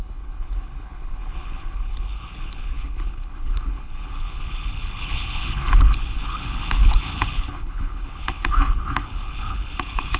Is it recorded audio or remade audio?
remade